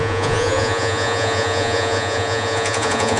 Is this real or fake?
fake